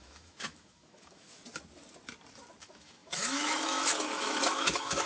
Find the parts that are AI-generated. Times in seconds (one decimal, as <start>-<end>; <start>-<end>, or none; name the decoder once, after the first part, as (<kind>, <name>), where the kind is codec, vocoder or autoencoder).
0.0-1.4 (autoencoder, DAC-VAE); 2.6-5.1